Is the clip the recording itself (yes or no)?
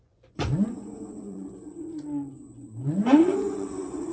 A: no